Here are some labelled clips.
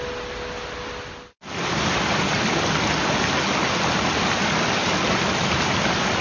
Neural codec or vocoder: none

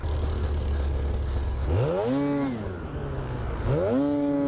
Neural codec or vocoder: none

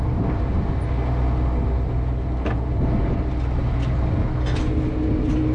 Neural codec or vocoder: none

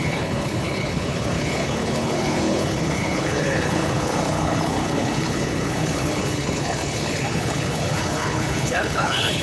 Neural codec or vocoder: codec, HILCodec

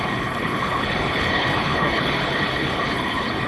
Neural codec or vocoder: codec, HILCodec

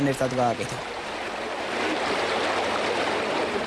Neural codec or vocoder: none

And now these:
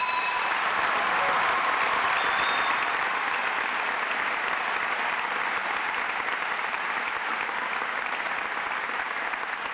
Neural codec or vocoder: none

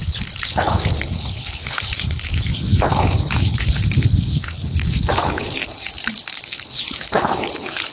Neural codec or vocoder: codec, HILCodec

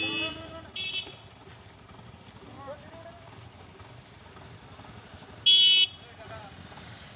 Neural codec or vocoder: none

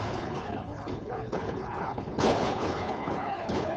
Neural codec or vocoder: codec, HILCodec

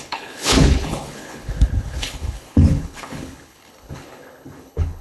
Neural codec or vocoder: codec, HILCodec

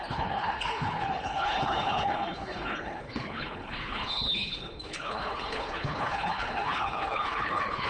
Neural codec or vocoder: codec, HILCodec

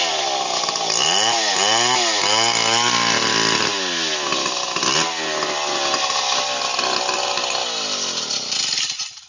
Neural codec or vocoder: none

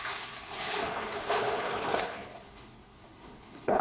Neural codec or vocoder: codec, HILCodec